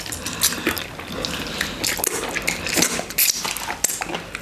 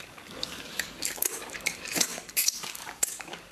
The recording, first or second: first